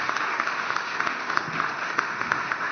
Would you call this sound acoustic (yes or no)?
no